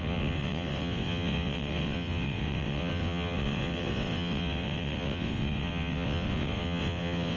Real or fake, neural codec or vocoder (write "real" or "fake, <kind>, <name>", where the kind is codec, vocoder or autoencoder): fake, vocoder, WaveNeXt